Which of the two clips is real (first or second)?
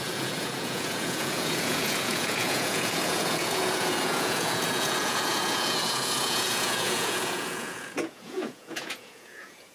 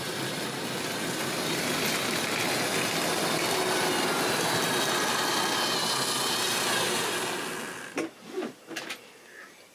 second